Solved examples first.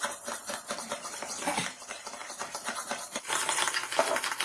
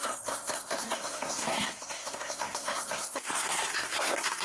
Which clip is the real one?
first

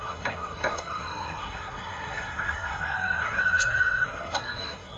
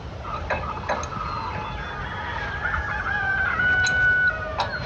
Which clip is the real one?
second